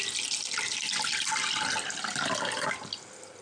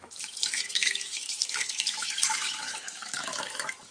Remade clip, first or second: second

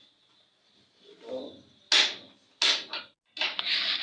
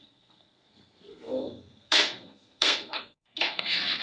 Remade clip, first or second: second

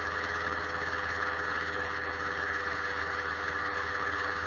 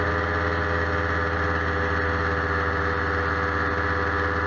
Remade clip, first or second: first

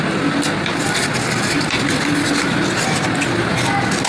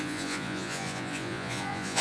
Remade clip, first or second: second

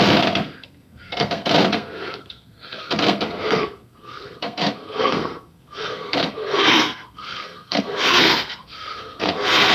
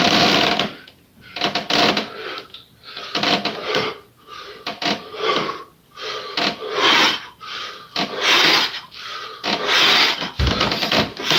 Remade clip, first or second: first